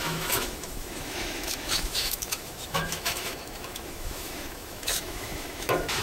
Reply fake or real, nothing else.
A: fake